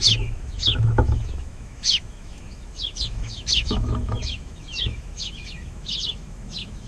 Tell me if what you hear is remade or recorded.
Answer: remade